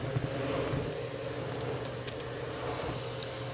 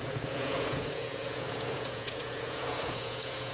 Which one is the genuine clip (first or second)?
first